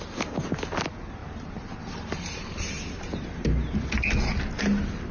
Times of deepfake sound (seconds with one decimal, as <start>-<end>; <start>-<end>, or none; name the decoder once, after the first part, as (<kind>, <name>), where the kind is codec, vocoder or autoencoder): 1.2-3.8 (vocoder, BigVGAN v2)